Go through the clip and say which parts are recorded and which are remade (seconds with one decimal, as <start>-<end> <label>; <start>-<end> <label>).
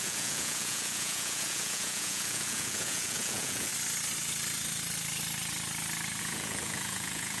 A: 0.0-3.7 remade; 3.7-6.2 recorded; 6.2-7.4 remade